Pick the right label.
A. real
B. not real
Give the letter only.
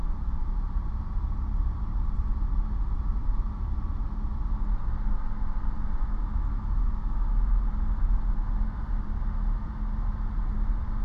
A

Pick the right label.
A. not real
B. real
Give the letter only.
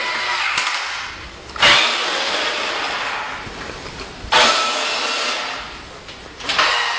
B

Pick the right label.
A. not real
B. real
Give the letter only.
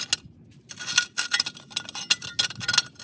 B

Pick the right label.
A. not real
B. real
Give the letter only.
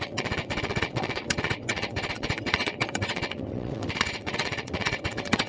A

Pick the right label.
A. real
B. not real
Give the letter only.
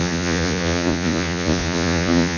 B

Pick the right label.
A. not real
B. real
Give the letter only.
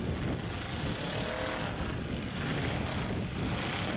B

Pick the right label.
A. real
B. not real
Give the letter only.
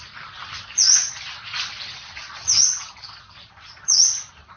A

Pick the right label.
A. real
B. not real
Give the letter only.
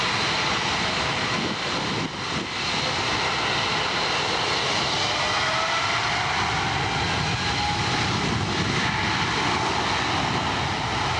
A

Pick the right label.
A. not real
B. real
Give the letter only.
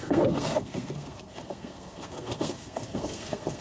A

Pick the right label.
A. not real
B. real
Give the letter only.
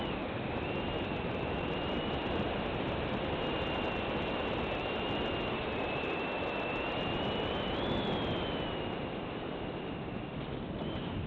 B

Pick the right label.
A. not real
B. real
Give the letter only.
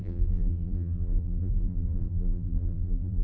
A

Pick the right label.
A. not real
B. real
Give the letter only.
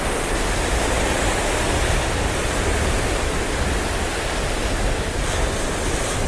B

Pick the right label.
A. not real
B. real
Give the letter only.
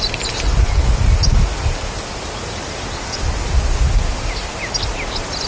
B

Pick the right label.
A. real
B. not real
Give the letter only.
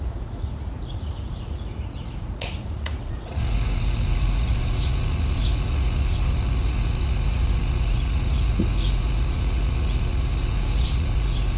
B